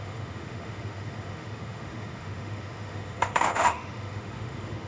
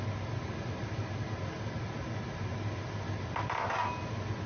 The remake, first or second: first